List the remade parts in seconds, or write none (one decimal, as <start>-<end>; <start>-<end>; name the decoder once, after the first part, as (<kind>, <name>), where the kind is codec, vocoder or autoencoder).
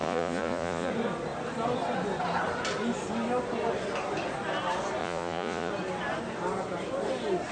0.0-0.9 (vocoder, Vocos); 5.0-5.7